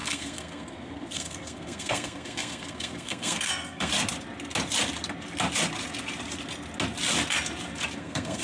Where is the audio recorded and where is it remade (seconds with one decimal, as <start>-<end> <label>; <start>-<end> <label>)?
0.0-3.9 remade; 3.9-8.0 recorded; 8.0-8.4 remade